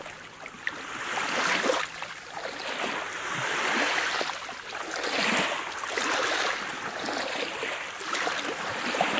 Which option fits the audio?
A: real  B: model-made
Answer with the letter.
A